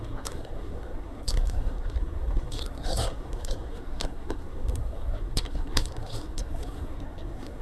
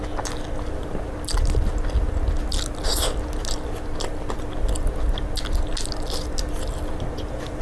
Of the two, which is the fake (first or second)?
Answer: first